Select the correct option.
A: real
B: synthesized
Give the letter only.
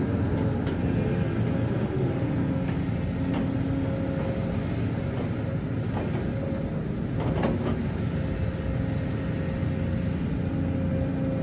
A